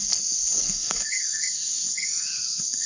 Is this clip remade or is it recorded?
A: remade